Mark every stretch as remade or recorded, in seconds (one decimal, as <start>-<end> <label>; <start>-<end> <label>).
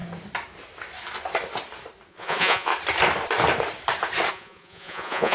0.0-2.1 recorded; 2.1-2.7 remade; 2.7-4.3 recorded; 4.3-5.3 remade